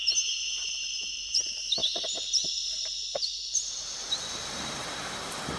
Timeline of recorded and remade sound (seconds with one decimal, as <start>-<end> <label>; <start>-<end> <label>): 0.0-1.8 recorded; 1.8-5.6 remade